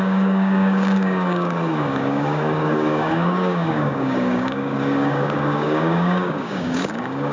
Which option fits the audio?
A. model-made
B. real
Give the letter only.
A